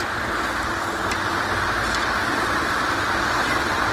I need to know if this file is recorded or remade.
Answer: recorded